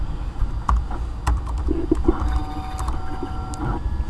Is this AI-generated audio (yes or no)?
no